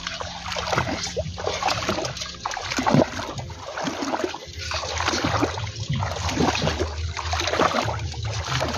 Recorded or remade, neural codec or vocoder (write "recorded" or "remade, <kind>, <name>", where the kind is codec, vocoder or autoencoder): recorded